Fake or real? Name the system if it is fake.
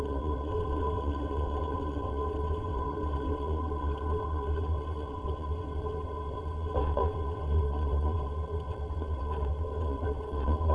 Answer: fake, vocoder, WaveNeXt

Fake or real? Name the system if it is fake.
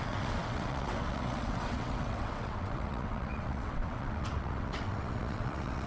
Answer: fake, vocoder, WaveNeXt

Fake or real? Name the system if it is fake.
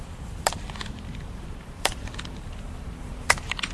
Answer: real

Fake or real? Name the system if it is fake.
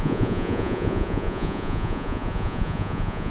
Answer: fake, vocoder, Vocos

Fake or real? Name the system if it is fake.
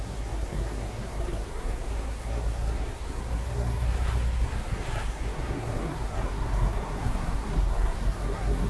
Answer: fake, codec, SNAC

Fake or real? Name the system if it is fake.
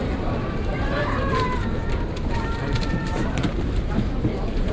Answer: fake, vocoder, BigVGAN v2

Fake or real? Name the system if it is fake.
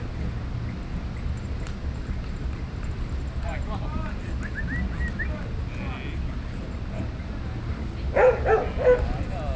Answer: real